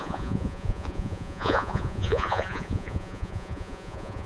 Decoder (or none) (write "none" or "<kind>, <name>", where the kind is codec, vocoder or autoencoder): vocoder, Vocos